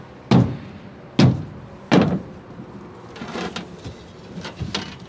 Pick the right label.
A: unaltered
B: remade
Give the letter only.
A